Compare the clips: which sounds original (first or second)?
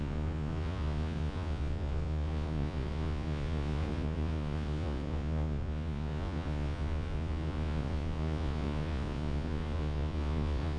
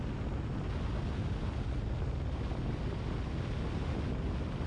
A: second